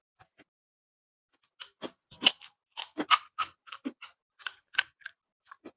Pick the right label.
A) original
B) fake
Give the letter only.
A